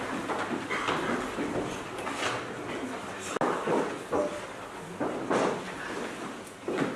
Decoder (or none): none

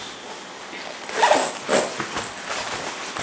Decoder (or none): none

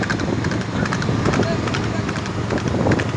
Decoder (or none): none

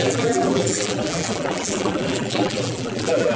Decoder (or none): vocoder, BigVGAN v2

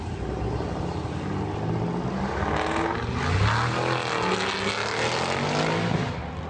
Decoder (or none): none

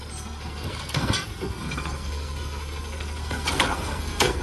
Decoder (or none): codec, SNAC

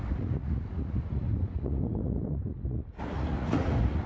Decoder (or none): vocoder, Vocos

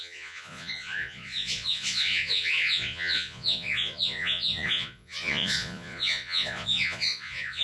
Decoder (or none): vocoder, Vocos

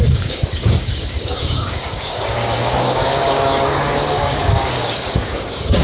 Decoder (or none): codec, DAC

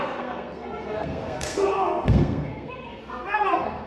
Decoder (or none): codec, SNAC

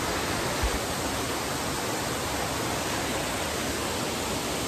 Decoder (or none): none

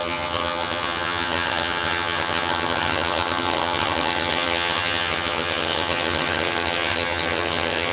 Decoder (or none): vocoder, HiFi-GAN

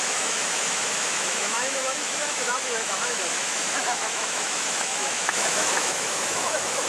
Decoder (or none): autoencoder, DAC-VAE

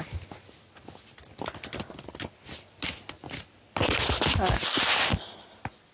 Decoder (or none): none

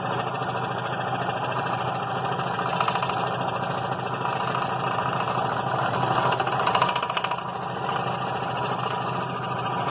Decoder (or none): none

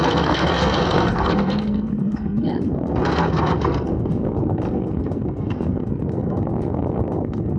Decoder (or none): codec, SNAC